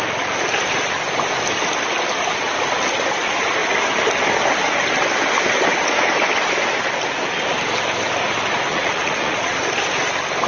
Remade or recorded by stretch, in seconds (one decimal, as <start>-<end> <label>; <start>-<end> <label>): 0.0-8.7 recorded; 8.7-9.6 remade; 9.6-10.5 recorded